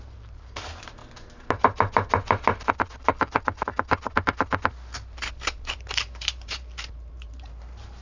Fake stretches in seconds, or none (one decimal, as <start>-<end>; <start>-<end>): 0.0-1.0; 5.3-8.0